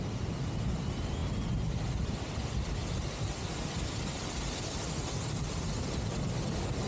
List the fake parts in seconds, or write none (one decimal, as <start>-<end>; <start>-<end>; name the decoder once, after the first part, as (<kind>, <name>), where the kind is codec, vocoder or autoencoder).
none